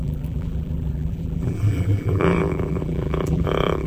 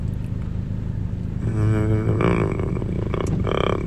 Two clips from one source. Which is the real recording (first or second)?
second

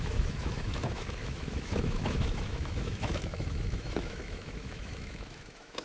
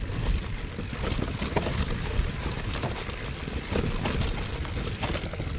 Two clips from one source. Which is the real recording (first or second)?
second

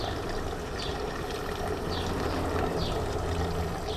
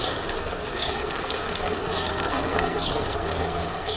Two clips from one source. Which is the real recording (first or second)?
first